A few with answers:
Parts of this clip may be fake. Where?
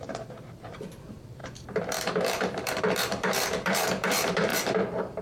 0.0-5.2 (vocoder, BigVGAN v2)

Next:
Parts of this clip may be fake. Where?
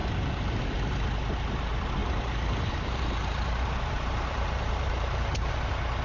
2.0-5.5 (vocoder, BigVGAN v2)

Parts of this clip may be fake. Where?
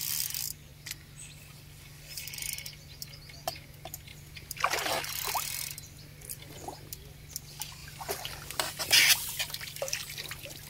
4.1-4.9 (vocoder, BigVGAN v2)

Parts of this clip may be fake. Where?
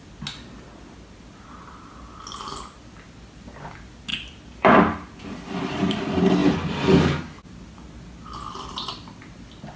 4.1-6.0 (vocoder, BigVGAN v2); 6.4-7.0